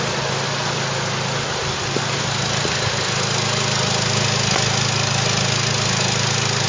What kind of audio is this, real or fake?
real